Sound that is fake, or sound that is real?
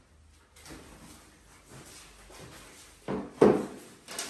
real